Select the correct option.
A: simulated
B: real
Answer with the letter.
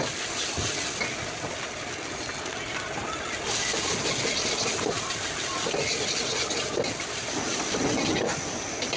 B